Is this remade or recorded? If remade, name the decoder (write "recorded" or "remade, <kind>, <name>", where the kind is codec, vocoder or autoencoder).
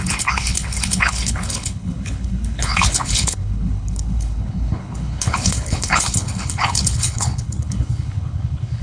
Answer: remade, codec, HILCodec